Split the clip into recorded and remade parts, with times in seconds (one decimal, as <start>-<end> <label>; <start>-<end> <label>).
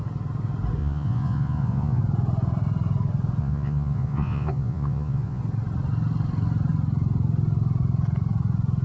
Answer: 0.0-0.8 recorded; 0.8-2.0 remade; 2.0-3.4 recorded; 3.4-5.4 remade; 5.4-8.8 recorded